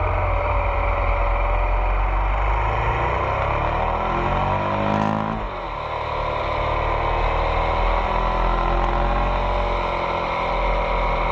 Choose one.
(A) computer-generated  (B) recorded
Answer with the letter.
B